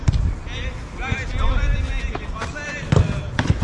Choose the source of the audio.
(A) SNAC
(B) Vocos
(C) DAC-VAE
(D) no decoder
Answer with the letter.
D